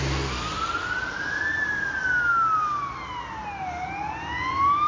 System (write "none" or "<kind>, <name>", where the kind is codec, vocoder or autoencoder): none